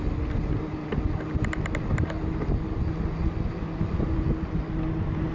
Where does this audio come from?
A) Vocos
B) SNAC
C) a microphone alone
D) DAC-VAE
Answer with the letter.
C